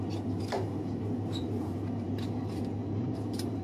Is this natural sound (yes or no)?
no